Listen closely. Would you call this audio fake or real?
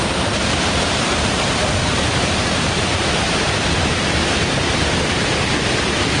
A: fake